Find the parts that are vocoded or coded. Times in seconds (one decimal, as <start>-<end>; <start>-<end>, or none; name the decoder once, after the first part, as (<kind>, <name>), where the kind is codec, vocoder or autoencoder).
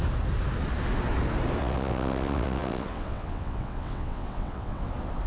1.6-4.8 (vocoder, WaveNeXt)